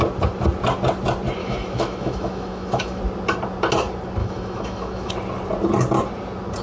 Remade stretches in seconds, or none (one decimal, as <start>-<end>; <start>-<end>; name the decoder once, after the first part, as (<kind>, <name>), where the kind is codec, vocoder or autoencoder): 1.4-3.0 (autoencoder, DAC-VAE); 4.2-5.1